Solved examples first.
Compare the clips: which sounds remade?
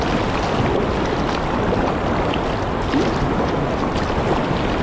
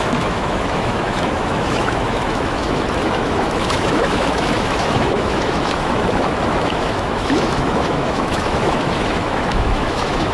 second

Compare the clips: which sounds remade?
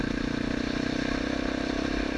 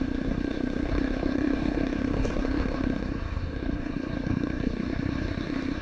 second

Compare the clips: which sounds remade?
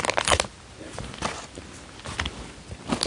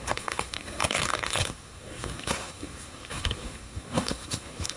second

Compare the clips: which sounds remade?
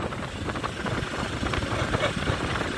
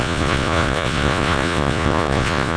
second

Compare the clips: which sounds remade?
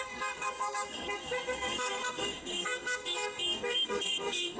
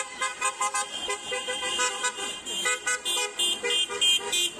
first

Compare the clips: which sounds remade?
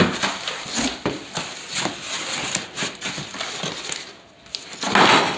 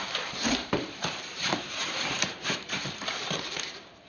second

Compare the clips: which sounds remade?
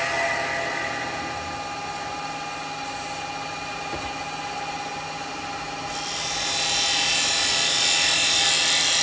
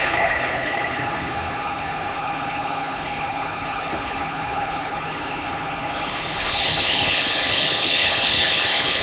second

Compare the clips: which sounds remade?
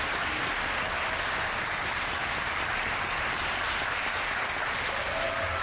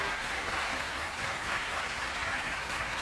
second